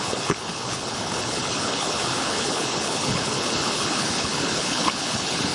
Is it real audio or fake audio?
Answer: fake